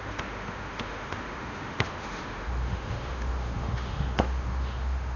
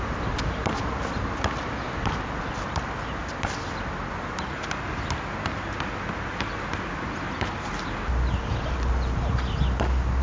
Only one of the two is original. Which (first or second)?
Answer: second